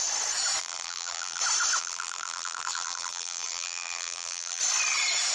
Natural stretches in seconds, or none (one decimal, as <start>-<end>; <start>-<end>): 0.0-0.6; 1.4-1.8; 4.6-5.3